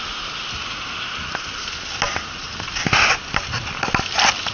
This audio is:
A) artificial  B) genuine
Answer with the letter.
B